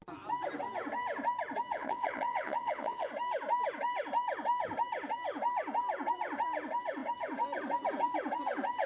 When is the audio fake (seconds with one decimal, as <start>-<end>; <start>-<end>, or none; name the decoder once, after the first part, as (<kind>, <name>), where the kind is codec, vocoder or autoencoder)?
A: 1.7-3.1 (vocoder, Vocos)